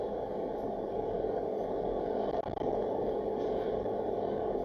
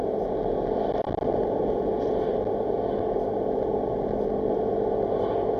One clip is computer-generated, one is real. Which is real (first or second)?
second